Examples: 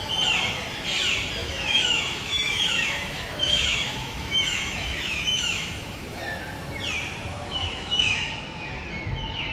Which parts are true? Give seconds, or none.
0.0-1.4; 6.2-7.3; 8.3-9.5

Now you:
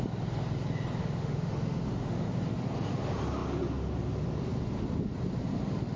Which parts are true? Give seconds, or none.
0.0-1.0; 2.3-6.0

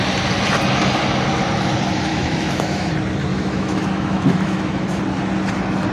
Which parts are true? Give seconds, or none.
0.0-2.1; 2.9-3.3; 5.0-5.9

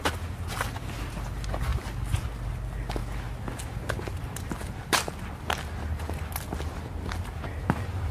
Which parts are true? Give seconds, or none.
0.0-8.1

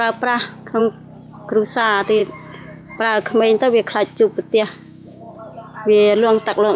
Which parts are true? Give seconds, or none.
0.0-2.2; 5.3-6.8